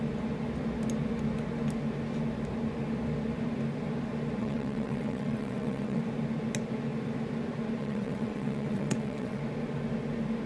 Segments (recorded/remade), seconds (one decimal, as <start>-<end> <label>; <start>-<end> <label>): 0.0-4.4 recorded; 4.4-6.0 remade; 6.0-7.8 recorded; 7.8-9.4 remade; 9.4-10.5 recorded